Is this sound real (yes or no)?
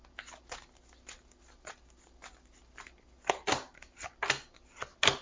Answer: yes